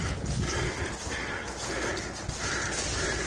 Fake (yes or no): no